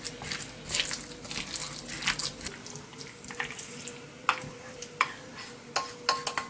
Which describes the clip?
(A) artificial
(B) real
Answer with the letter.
B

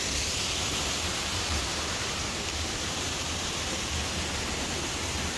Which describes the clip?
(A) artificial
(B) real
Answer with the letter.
A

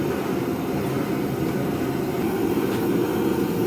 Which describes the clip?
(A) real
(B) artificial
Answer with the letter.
A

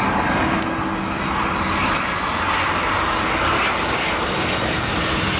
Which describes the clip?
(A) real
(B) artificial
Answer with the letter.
A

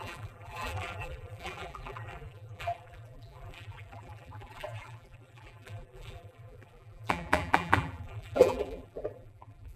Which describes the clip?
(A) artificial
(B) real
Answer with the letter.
A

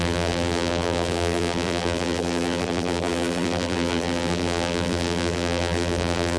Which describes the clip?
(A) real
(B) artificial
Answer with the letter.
B